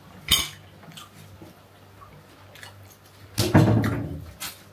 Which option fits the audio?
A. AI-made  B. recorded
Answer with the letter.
B